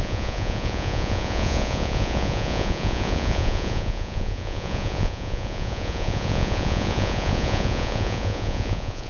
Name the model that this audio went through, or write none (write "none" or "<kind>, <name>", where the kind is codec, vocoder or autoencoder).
vocoder, Vocos